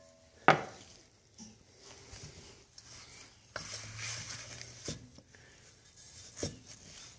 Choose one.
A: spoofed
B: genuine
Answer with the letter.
B